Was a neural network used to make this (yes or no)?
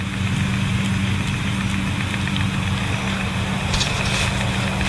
no